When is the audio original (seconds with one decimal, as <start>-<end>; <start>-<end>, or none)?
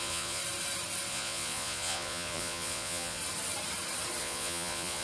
0.4-1.1; 3.2-4.2